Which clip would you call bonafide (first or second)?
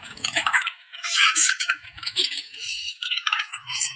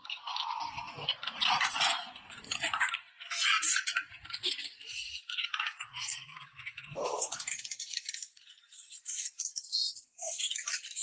second